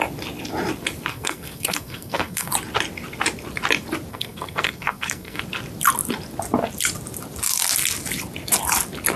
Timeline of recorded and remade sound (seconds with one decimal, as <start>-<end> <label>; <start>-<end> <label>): 0.0-1.1 recorded; 1.1-2.5 remade; 2.5-4.1 recorded; 4.1-5.4 remade; 5.4-9.2 recorded

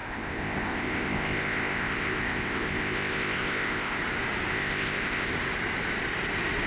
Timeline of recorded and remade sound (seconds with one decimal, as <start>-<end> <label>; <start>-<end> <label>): 0.0-4.0 remade; 4.0-4.5 recorded; 4.5-5.3 remade; 5.3-6.7 recorded

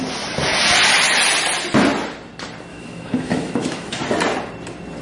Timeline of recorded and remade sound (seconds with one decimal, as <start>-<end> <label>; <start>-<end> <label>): 0.0-2.7 recorded; 2.7-4.0 remade; 4.0-5.0 recorded

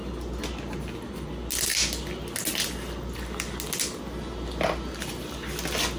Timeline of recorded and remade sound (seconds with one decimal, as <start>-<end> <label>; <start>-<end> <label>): 0.0-6.0 recorded

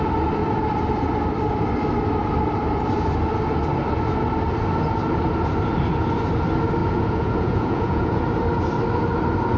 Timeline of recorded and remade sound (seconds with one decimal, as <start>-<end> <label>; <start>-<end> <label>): 0.0-6.8 recorded; 6.8-8.2 remade; 8.2-9.6 recorded

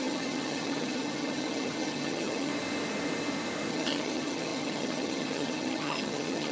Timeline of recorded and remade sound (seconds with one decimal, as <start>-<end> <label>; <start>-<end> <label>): 0.0-2.5 remade; 2.5-3.7 recorded; 3.7-6.5 remade

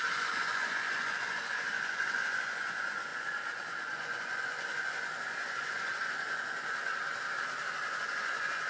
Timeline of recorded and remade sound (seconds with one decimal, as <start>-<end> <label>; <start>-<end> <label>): 0.0-6.9 remade; 6.9-7.7 recorded; 7.7-8.7 remade

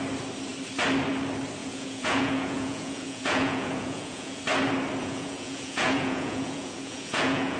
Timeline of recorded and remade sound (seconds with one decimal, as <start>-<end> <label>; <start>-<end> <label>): 0.0-1.6 recorded; 1.6-4.4 remade; 4.4-5.0 recorded; 5.0-7.6 remade